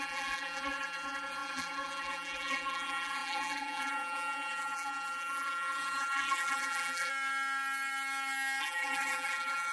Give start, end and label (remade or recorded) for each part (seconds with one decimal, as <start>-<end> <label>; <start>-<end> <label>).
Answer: 0.0-7.1 remade; 7.1-8.6 recorded; 8.6-9.7 remade

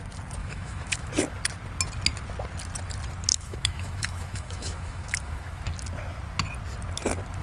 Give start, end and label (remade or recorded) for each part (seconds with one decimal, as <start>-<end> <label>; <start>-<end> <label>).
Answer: 0.0-0.4 recorded; 0.4-1.1 remade; 1.1-3.3 recorded; 3.3-5.6 remade; 5.6-7.4 recorded

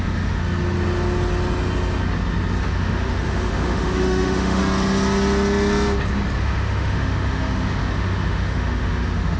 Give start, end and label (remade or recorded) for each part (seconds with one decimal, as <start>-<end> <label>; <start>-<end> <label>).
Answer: 0.0-0.4 remade; 0.4-2.6 recorded; 2.6-4.6 remade; 4.6-6.4 recorded; 6.4-9.4 remade

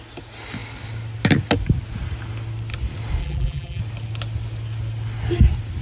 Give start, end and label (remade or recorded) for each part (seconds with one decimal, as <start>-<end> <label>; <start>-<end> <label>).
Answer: 0.0-3.2 recorded; 3.2-3.8 remade; 3.8-5.8 recorded

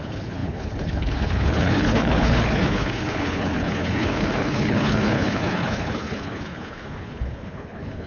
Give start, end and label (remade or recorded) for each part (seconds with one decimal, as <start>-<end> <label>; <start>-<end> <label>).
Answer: 0.0-8.1 remade

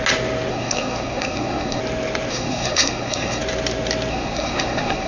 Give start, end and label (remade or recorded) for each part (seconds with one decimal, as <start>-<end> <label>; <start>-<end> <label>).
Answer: 0.0-0.5 recorded; 0.5-1.8 remade; 1.8-2.3 recorded; 2.3-3.4 remade; 3.4-4.1 recorded; 4.1-5.1 remade

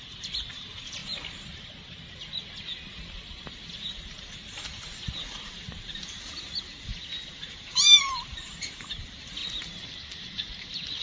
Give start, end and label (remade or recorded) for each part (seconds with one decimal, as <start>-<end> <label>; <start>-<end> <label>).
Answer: 0.0-1.0 remade; 1.0-3.9 recorded; 3.9-6.9 remade; 6.9-7.5 recorded; 7.5-9.4 remade; 9.4-11.0 recorded